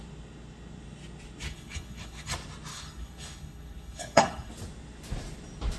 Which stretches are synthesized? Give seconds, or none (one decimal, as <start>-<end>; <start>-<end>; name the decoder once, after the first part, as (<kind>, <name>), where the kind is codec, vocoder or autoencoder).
1.5-2.3 (codec, HILCodec); 2.7-4.5